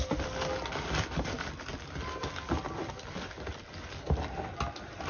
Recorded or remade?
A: recorded